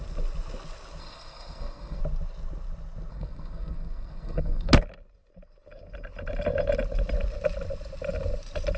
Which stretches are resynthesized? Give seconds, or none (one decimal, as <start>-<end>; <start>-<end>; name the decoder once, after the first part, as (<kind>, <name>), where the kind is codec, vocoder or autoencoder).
1.0-2.0 (codec, SNAC); 3.1-4.7